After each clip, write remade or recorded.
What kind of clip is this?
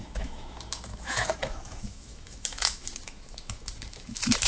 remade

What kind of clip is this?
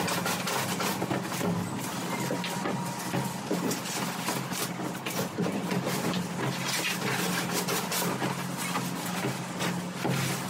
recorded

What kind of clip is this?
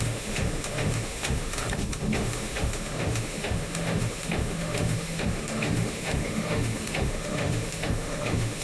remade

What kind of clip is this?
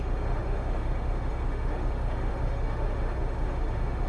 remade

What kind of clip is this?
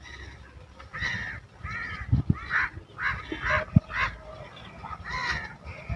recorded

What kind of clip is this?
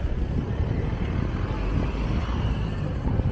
recorded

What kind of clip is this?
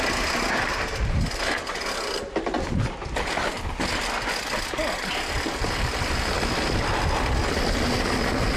recorded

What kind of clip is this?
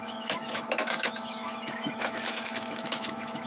remade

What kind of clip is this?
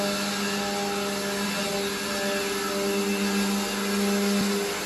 recorded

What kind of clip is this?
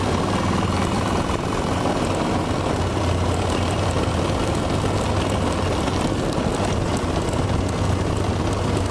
recorded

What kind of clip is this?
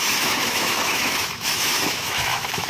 remade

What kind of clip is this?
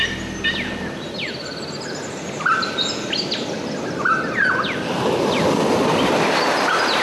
recorded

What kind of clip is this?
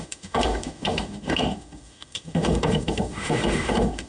remade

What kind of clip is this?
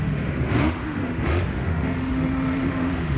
remade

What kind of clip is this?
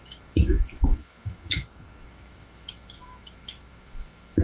remade